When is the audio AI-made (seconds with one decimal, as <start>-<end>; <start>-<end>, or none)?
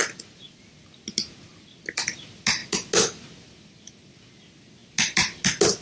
0.0-0.6; 1.5-2.1